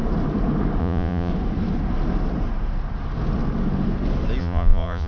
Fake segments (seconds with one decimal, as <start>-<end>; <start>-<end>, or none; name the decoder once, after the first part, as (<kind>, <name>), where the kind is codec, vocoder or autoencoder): 0.8-1.3 (vocoder, Vocos); 4.4-5.1